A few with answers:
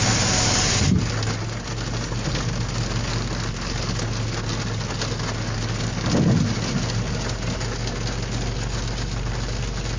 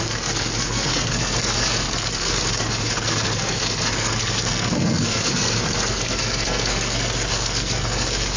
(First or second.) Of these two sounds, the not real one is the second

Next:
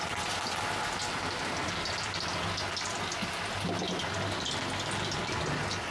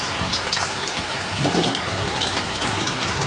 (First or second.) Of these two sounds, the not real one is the second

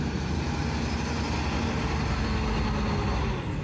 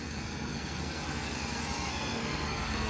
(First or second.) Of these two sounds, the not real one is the second